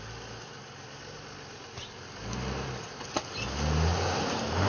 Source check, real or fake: real